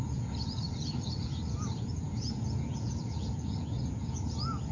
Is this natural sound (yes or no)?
no